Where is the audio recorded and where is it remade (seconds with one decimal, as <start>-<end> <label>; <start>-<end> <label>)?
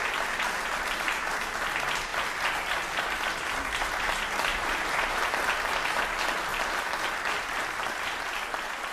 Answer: 0.0-4.5 recorded; 4.5-5.2 remade; 5.2-8.9 recorded